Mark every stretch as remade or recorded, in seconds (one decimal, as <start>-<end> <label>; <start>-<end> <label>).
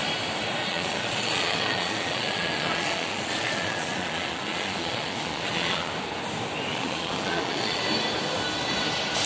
0.0-0.6 recorded; 0.6-5.9 remade; 5.9-6.7 recorded; 6.7-7.8 remade; 7.8-9.3 recorded